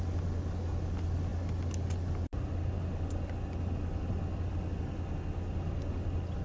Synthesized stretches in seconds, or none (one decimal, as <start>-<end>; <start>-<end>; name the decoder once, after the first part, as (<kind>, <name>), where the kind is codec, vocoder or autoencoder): none